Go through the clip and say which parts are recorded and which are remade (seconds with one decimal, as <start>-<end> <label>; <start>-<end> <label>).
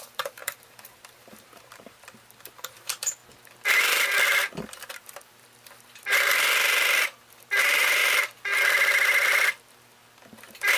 0.0-3.2 remade; 3.2-7.6 recorded; 7.6-8.0 remade; 8.0-10.8 recorded